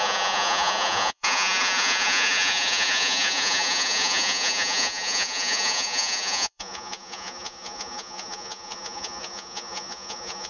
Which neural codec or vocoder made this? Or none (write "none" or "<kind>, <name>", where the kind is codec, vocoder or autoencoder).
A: vocoder, Vocos